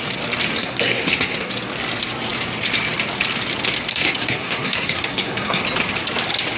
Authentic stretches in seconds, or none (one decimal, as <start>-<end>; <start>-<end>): 0.0-0.6; 1.5-3.9; 5.6-6.6